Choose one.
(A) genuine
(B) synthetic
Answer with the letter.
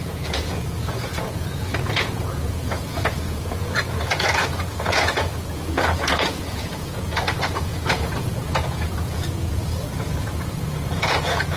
B